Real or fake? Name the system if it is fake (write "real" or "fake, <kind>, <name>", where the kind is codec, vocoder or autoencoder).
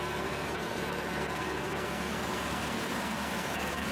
fake, codec, SNAC